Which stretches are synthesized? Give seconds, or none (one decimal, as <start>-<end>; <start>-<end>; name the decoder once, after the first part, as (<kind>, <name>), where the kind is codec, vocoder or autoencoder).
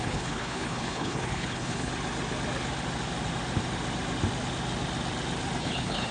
0.0-1.9 (codec, HILCodec); 5.6-6.1